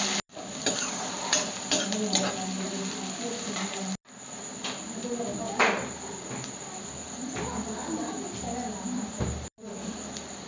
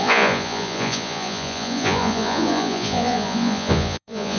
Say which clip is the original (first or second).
first